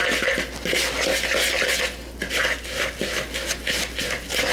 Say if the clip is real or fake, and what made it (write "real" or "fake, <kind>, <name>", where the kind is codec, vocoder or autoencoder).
real